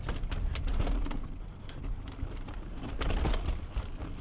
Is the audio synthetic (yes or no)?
no